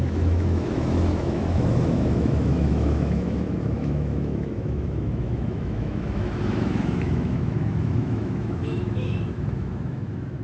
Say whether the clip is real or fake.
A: fake